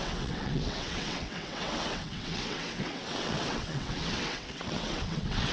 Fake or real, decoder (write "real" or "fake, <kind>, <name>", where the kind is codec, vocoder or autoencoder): fake, vocoder, WaveNeXt